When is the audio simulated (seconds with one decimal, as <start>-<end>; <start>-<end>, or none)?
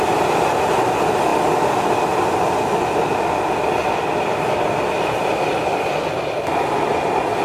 none